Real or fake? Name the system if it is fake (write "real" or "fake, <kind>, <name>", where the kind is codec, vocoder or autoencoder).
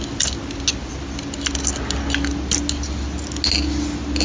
real